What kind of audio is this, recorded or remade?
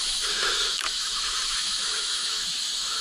remade